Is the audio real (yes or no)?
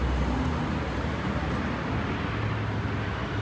yes